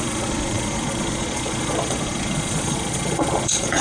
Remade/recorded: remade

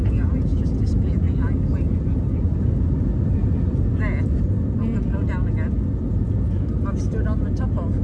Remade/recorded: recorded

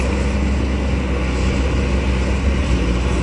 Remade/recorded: recorded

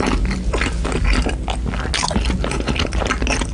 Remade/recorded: recorded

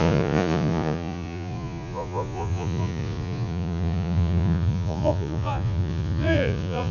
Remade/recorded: remade